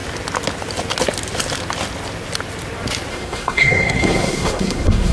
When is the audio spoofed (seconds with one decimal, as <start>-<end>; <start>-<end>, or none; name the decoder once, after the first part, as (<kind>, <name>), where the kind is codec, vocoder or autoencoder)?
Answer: 3.1-5.1 (codec, SNAC)